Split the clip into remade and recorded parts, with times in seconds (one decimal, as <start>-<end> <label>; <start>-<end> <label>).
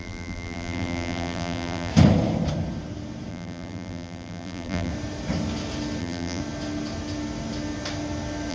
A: 0.0-1.9 remade; 1.9-3.3 recorded; 3.3-4.9 remade; 4.9-6.0 recorded; 6.0-6.4 remade; 6.4-8.5 recorded